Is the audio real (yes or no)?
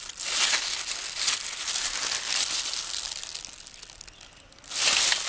yes